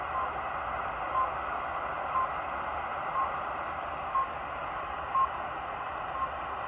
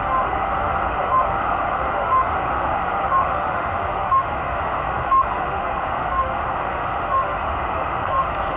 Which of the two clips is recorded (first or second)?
first